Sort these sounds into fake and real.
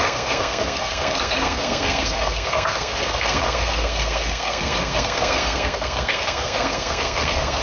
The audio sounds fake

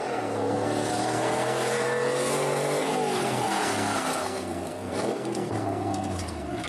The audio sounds fake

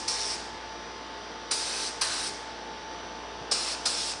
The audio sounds real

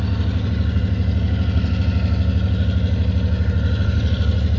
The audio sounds real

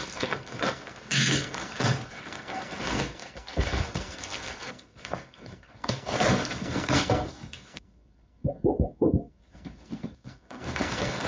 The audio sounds fake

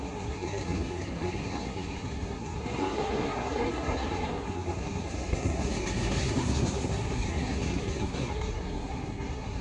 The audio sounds fake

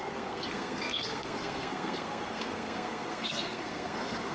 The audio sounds fake